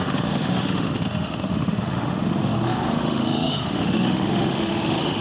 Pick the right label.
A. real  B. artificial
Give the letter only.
B